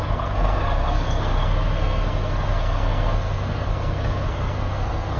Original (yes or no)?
no